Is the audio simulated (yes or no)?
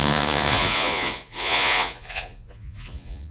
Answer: yes